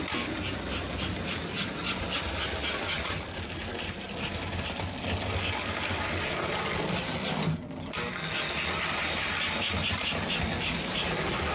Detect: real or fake real